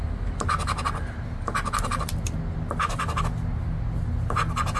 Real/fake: real